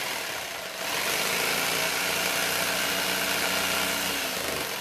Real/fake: real